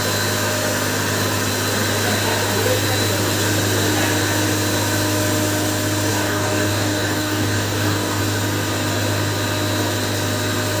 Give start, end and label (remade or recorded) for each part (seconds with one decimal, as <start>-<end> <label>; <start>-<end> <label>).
0.0-6.1 recorded; 6.1-8.2 remade; 8.2-10.8 recorded